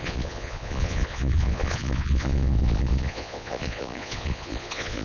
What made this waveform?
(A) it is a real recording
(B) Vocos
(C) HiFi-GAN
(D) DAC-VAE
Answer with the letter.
B